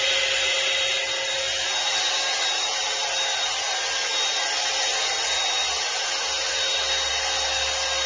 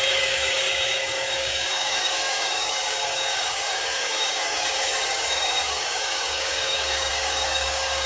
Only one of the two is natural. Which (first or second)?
first